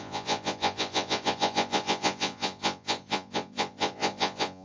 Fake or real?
fake